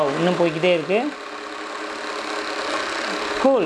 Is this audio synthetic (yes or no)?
no